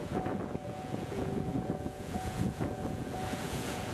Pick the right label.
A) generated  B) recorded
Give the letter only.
A